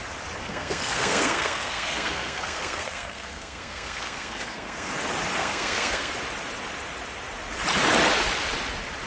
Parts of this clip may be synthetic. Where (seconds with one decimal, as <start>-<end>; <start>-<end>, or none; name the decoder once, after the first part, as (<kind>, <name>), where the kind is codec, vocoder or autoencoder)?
0.4-4.9 (codec, SNAC); 5.4-6.1